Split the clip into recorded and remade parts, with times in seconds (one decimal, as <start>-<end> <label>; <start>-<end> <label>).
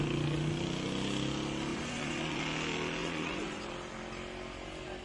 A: 0.0-1.7 recorded; 1.7-2.4 remade; 2.4-3.0 recorded; 3.0-3.7 remade; 3.7-5.0 recorded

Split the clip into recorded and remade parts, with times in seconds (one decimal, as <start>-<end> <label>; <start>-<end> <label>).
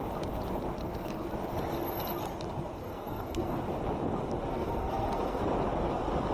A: 0.0-0.8 recorded; 0.8-1.3 remade; 1.3-2.8 recorded; 2.8-3.6 remade; 3.6-4.5 recorded; 4.5-5.4 remade; 5.4-6.3 recorded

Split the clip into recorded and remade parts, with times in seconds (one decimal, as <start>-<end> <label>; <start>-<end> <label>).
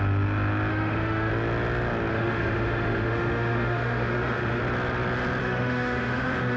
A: 0.0-0.7 recorded; 0.7-1.3 remade; 1.3-2.1 recorded; 2.1-4.6 remade; 4.6-5.4 recorded; 5.4-6.6 remade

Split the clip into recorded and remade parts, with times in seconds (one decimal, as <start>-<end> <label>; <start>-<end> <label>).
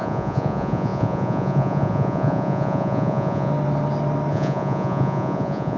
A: 0.0-3.5 remade; 3.5-4.3 recorded; 4.3-5.8 remade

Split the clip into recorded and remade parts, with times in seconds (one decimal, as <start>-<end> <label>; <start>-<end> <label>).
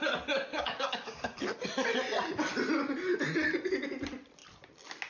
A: 0.0-0.5 recorded; 0.5-1.4 remade; 1.4-5.1 recorded